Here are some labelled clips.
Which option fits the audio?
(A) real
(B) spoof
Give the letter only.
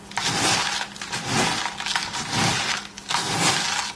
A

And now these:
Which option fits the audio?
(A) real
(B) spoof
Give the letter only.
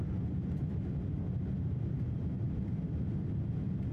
A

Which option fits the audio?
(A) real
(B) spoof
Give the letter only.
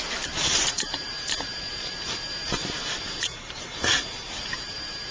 B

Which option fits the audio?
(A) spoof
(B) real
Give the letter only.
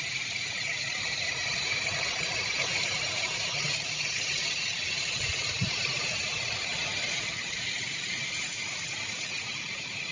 A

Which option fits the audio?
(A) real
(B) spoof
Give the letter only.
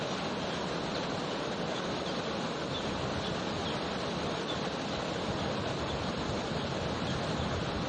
A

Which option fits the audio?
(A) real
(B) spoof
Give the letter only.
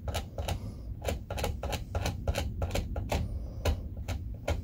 A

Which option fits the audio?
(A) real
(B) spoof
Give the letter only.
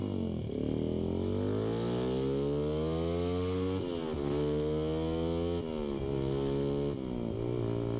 A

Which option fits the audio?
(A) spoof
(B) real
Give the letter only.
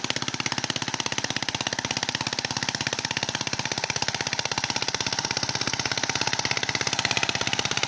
B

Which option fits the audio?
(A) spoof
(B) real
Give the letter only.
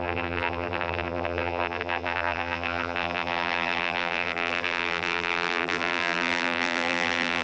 A